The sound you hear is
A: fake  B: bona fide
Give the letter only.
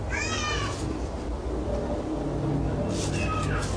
B